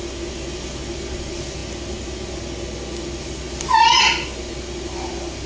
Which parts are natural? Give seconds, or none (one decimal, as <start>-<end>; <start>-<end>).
0.0-5.5